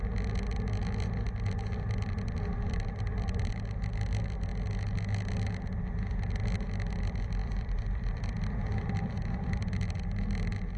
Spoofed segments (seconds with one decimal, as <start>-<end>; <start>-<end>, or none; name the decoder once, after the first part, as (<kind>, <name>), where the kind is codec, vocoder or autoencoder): 7.4-8.2 (vocoder, BigVGAN v2)